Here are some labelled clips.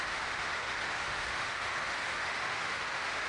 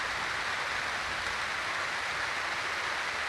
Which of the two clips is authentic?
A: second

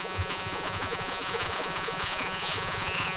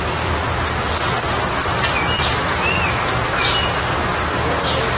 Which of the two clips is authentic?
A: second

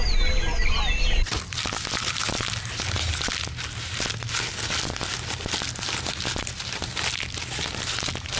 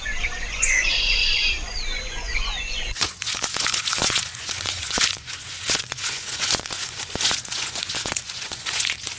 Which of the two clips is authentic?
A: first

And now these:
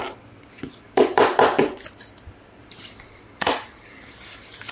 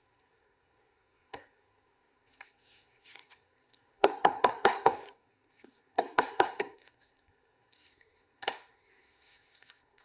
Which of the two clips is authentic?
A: first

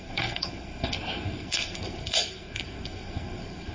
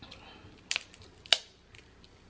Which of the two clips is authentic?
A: second